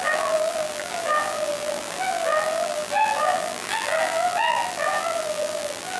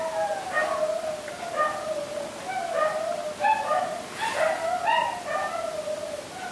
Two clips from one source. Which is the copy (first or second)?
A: first